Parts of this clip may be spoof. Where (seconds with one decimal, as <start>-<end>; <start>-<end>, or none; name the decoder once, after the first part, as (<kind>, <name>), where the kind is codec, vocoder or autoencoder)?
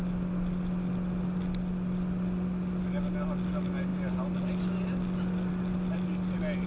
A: none